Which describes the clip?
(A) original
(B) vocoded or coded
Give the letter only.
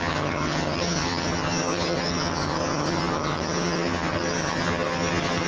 B